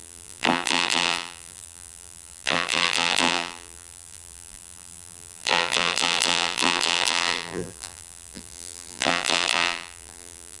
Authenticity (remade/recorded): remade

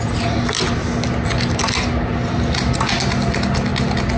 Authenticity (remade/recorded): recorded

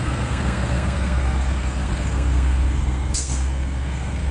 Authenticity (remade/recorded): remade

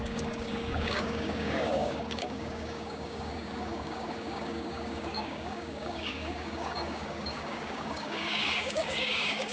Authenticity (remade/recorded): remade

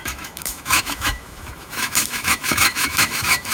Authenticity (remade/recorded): remade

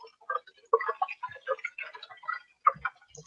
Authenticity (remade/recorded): recorded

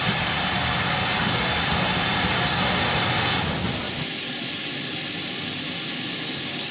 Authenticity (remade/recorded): recorded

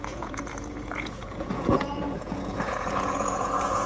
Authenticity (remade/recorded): remade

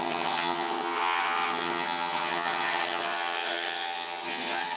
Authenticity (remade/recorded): remade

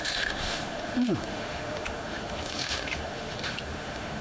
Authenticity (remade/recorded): remade